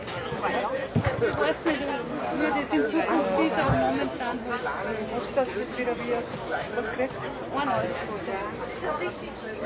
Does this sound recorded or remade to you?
recorded